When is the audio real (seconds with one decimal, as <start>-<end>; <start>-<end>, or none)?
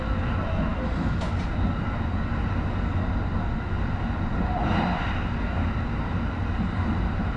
0.0-7.4